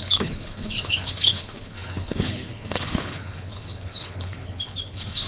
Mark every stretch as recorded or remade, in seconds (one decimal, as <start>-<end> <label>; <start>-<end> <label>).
0.0-5.3 remade